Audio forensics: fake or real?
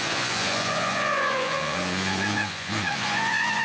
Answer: fake